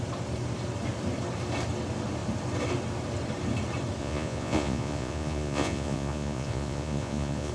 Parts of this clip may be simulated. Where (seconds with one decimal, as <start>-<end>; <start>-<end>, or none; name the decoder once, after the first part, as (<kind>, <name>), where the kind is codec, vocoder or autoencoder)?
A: 4.0-7.5 (vocoder, Vocos)